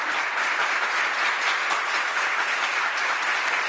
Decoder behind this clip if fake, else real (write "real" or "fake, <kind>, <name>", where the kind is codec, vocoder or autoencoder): real